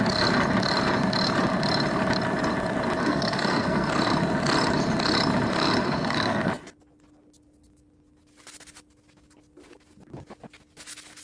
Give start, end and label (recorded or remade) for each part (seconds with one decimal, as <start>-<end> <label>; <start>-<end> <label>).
0.0-3.0 recorded; 3.0-3.9 remade; 3.9-5.8 recorded; 5.8-6.5 remade; 6.5-11.2 recorded